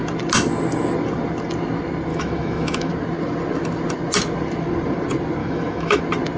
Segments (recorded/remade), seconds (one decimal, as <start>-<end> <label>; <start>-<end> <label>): 0.0-2.1 recorded; 2.1-2.9 remade; 2.9-5.4 recorded; 5.4-6.0 remade; 6.0-6.4 recorded